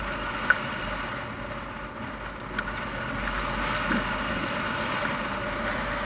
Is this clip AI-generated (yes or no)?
no